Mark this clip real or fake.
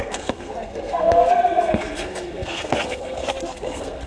fake